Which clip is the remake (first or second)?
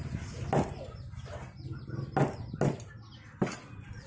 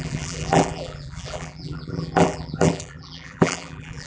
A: second